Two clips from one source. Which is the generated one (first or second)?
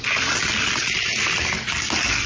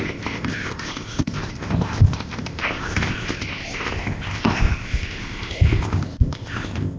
second